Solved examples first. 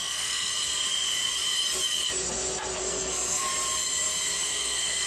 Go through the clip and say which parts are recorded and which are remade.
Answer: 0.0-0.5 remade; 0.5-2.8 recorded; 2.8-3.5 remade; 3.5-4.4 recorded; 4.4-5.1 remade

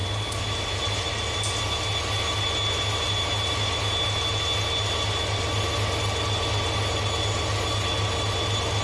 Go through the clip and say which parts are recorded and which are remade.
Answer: 0.0-8.8 recorded